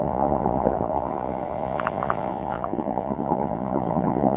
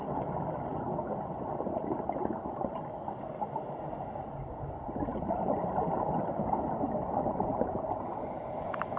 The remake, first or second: first